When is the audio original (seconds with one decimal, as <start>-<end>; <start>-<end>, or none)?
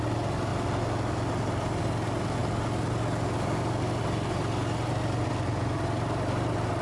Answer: 0.0-6.8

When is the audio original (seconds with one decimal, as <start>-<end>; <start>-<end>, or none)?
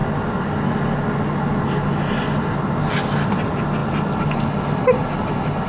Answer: 0.0-5.7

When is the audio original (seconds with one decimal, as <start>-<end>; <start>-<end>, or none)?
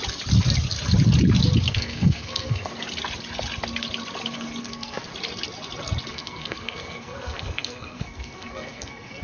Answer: 0.0-1.7; 2.7-4.6; 5.1-6.1